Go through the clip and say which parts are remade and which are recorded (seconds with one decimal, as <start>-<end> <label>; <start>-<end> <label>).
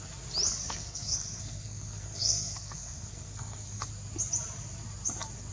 0.0-0.6 recorded; 0.6-3.9 remade; 3.9-5.5 recorded